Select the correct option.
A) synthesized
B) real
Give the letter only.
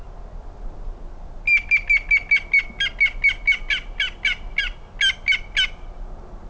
B